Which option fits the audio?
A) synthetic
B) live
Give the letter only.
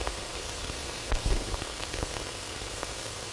A